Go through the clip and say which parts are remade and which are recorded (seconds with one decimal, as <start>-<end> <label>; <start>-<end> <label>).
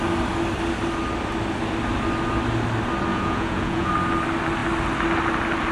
0.0-3.1 recorded; 3.1-3.9 remade; 3.9-5.7 recorded